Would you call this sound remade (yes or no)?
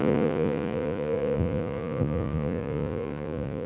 yes